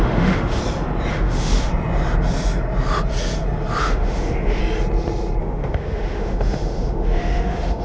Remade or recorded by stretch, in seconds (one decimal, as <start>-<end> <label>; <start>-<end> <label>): 0.0-0.6 remade; 0.6-1.1 recorded; 1.1-1.7 remade; 1.7-3.8 recorded; 3.8-4.6 remade; 4.6-5.4 recorded; 5.4-7.8 remade